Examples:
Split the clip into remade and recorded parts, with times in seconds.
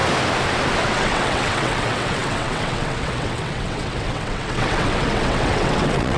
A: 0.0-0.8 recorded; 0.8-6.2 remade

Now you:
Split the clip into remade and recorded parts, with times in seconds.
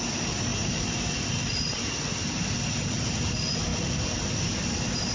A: 0.0-5.1 recorded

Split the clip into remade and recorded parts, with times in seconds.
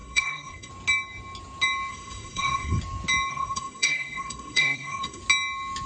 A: 0.0-0.7 remade; 0.7-1.9 recorded; 1.9-2.8 remade; 2.8-3.3 recorded; 3.3-5.2 remade; 5.2-5.9 recorded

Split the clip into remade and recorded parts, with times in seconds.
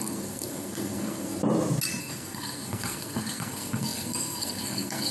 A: 0.0-1.4 remade; 1.4-2.0 recorded; 2.0-5.1 remade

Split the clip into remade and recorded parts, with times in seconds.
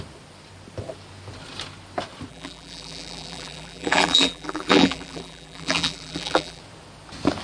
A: 0.0-2.3 recorded; 2.3-6.6 remade; 6.6-7.4 recorded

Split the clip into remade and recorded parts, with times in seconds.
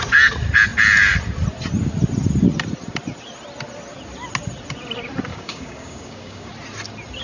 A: 0.0-5.3 recorded; 5.3-6.5 remade; 6.5-7.2 recorded